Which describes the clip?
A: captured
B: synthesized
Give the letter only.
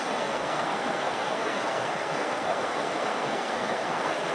B